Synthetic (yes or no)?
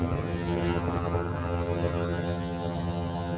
yes